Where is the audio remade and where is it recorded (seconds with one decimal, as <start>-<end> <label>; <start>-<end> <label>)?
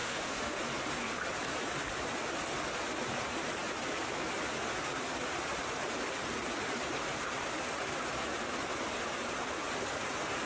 0.0-0.6 remade; 0.6-10.5 recorded